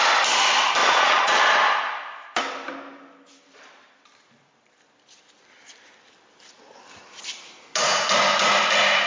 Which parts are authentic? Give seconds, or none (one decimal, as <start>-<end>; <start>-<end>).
0.0-0.8; 1.4-9.1